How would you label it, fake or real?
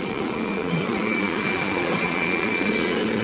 fake